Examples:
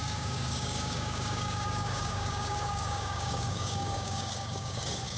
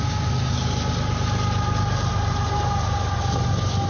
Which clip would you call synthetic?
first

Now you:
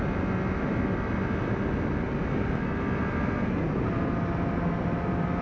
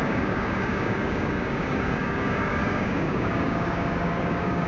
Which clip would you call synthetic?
second